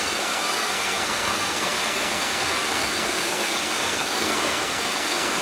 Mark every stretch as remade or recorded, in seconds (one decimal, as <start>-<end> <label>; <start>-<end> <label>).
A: 0.0-5.4 remade